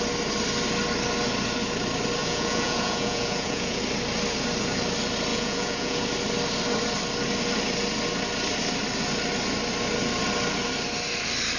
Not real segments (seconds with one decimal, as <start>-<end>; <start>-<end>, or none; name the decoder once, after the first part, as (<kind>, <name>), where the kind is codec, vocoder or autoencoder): 2.2-3.8 (vocoder, Vocos); 5.3-6.0